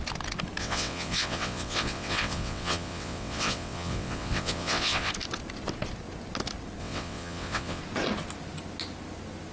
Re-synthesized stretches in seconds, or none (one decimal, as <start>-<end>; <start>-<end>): 0.6-5.1; 6.8-7.8